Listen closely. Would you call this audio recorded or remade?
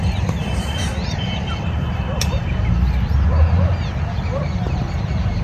remade